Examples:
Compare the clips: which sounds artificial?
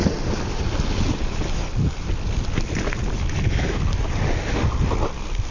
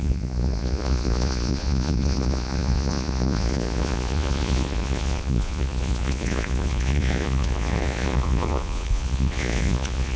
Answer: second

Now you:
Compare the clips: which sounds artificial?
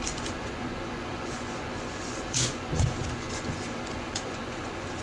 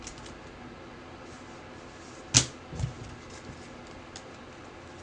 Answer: first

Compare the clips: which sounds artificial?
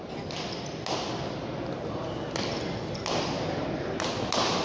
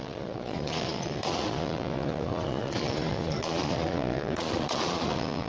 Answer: second